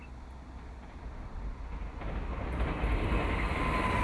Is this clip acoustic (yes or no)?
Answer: yes